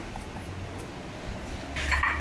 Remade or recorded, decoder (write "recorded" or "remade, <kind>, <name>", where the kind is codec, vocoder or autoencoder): recorded